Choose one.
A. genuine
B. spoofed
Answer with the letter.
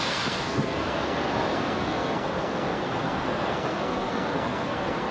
B